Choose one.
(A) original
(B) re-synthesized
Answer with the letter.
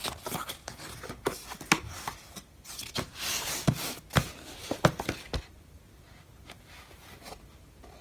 A